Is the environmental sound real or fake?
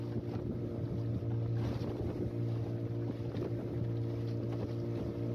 real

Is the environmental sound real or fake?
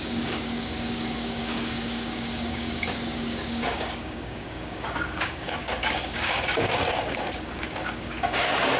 fake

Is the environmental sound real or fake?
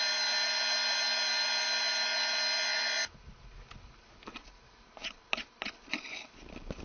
real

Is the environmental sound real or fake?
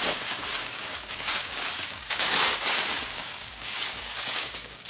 fake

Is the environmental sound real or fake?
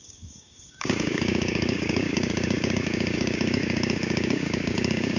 fake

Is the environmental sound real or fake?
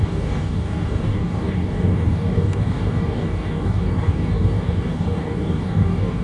fake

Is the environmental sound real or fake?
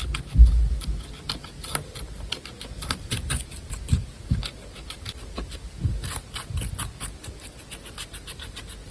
real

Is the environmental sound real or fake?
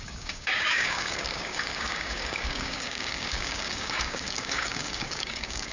fake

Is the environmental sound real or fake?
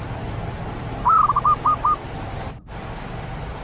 real